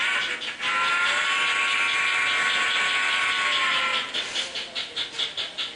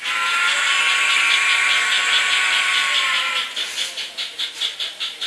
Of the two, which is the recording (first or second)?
first